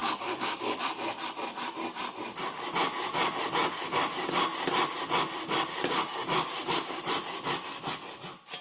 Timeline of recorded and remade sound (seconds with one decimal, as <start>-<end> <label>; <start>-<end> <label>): 0.0-0.8 remade; 0.8-6.1 recorded; 6.1-7.0 remade; 7.0-8.6 recorded